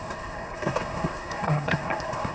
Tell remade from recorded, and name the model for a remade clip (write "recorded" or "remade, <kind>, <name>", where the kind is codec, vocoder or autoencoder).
remade, codec, SNAC